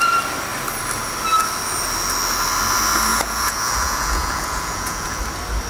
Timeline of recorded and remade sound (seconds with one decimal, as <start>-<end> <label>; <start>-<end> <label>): 0.0-3.1 recorded; 3.1-5.2 remade; 5.2-5.7 recorded